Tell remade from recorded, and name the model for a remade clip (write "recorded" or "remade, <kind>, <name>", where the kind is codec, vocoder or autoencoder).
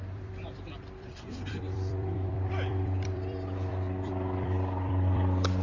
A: remade, vocoder, BigVGAN v2